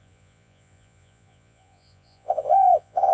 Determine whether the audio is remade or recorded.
remade